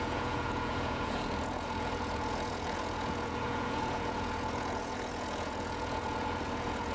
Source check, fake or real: fake